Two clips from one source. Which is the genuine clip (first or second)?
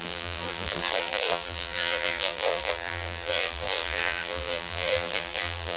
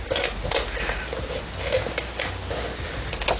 second